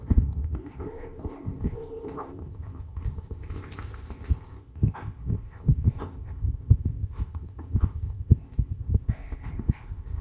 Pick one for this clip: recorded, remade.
remade